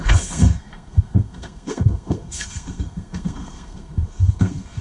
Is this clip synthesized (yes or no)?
yes